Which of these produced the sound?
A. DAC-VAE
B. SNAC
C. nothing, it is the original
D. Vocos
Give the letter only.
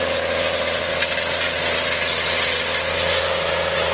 C